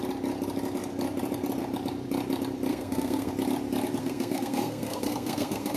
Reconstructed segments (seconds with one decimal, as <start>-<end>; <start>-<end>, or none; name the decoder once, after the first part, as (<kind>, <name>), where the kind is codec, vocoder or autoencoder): 2.7-3.3 (codec, SNAC); 4.0-5.8

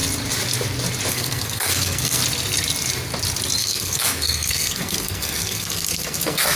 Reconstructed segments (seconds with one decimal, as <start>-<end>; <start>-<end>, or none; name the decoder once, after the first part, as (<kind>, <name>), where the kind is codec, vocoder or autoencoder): 1.1-2.2 (codec, SNAC); 3.6-6.6

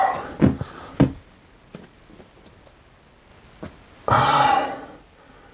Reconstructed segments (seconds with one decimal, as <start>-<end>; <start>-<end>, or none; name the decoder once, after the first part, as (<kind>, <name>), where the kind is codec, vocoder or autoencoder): none

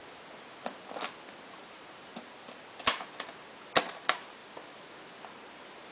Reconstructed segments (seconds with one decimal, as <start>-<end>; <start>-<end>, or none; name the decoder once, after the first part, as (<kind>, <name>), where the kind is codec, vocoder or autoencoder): 1.6-2.1 (vocoder, BigVGAN v2); 3.8-4.4; 5.3-5.9